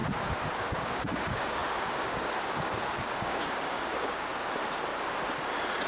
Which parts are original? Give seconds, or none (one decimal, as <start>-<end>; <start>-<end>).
0.0-0.6; 4.3-5.9